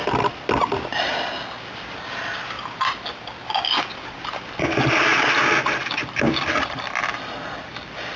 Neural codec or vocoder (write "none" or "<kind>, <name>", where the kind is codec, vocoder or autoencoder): none